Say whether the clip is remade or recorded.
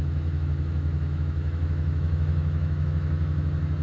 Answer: remade